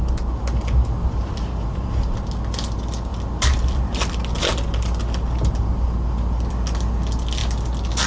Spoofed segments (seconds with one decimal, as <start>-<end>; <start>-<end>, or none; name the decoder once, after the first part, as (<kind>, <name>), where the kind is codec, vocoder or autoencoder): 1.0-2.3 (vocoder, BigVGAN v2)